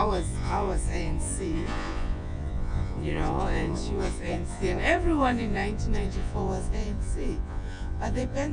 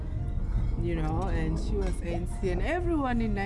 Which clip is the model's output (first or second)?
first